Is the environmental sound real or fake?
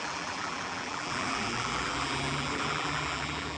fake